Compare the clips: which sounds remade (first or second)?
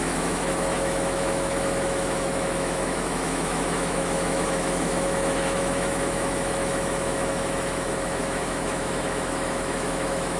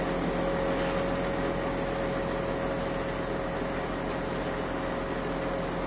first